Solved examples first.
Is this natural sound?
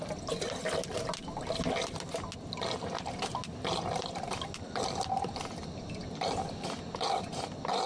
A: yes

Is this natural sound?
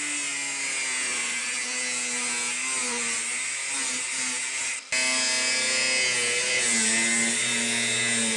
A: yes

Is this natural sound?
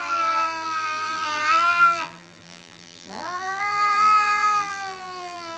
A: no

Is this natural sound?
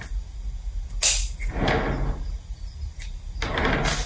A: yes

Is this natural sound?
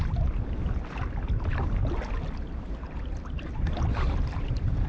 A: yes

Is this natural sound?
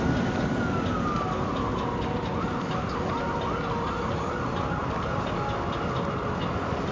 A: yes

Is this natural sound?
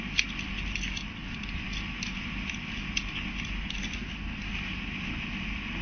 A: yes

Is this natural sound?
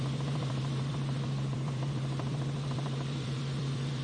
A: no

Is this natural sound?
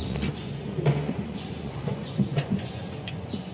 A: no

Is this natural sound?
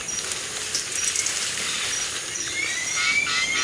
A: yes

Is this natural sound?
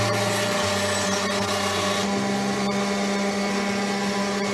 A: yes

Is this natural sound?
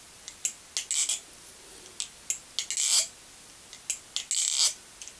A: yes